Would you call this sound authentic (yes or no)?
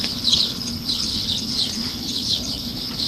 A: no